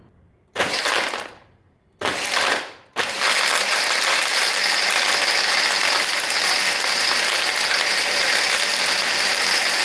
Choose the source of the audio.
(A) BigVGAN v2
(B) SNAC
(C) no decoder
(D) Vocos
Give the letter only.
C